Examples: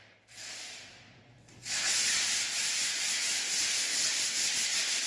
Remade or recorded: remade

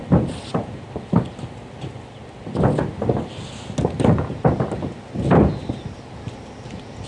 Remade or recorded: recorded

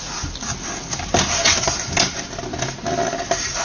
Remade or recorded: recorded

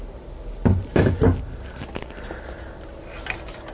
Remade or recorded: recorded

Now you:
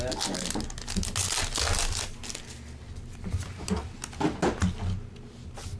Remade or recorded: recorded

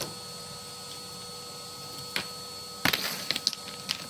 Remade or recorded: recorded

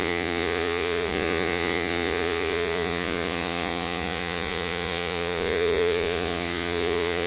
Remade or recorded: remade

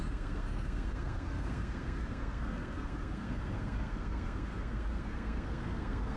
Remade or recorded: remade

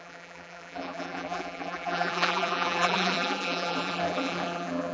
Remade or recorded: remade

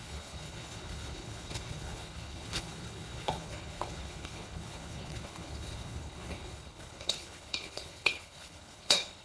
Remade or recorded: remade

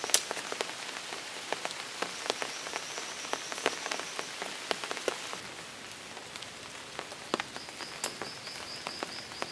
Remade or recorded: recorded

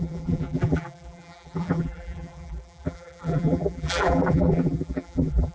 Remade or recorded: remade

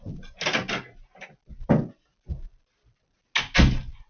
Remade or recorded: recorded